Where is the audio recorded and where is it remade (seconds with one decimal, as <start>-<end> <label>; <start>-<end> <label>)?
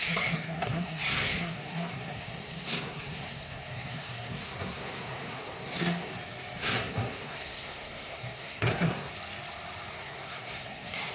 0.0-6.1 remade; 6.1-6.6 recorded; 6.6-9.1 remade; 9.1-9.9 recorded; 9.9-11.1 remade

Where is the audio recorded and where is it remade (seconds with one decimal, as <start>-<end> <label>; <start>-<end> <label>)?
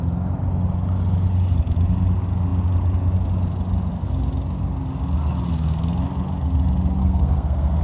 0.0-7.0 recorded; 7.0-7.8 remade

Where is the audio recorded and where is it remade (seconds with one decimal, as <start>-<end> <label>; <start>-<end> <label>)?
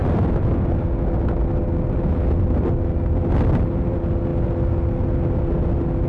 0.0-6.1 recorded